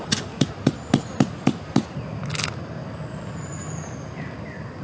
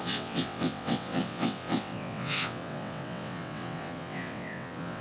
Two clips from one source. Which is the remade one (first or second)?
second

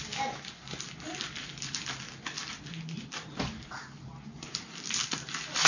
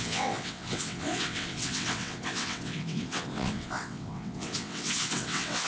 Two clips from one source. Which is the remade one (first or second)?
second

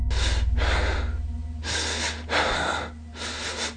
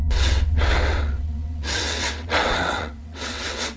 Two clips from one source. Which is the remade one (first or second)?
second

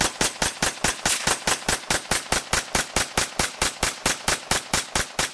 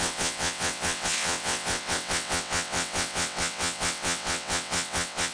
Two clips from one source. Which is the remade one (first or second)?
second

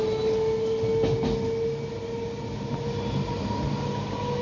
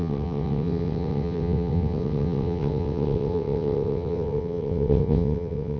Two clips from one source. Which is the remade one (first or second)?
second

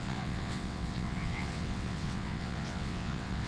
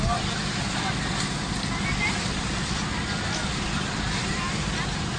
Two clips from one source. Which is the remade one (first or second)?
first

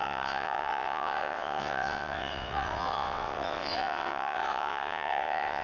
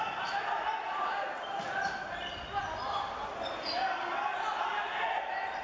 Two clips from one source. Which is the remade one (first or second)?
first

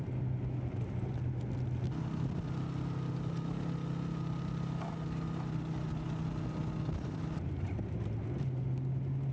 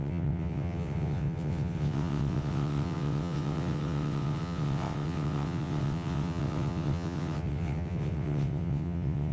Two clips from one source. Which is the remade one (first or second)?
second